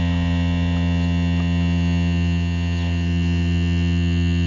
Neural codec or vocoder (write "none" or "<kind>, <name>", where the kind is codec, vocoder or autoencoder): none